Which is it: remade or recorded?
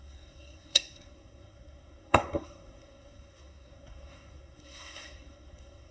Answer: remade